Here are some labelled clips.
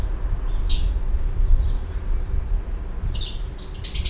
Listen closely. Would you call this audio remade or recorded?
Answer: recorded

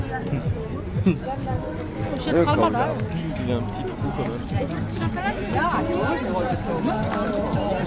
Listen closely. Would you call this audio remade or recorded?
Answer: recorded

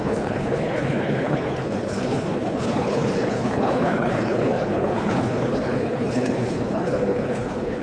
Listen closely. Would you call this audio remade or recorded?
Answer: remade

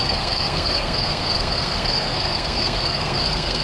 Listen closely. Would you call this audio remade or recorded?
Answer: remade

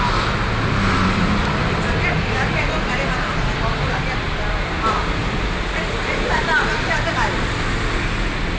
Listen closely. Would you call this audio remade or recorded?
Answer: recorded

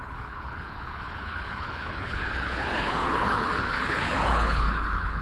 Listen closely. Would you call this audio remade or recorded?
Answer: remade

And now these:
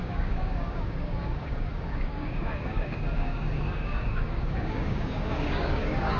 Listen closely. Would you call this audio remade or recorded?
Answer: remade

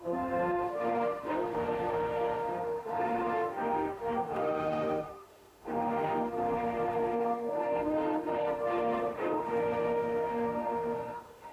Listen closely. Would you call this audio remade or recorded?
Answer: remade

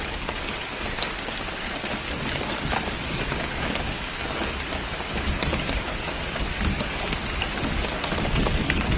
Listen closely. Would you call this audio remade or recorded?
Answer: remade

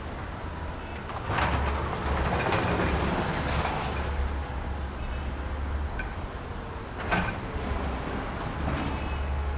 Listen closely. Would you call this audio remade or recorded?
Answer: recorded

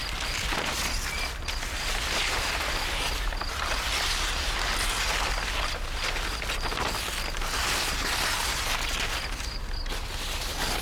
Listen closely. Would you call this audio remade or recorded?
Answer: recorded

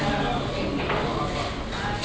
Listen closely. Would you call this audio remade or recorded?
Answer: recorded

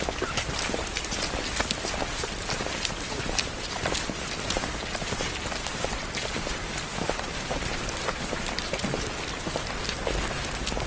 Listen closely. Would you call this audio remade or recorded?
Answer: remade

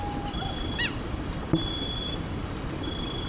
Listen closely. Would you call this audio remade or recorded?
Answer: recorded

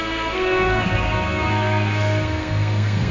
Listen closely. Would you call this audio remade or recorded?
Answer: remade